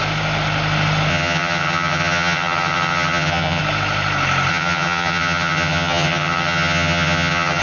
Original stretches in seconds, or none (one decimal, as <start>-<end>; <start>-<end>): 0.0-1.1; 3.6-4.5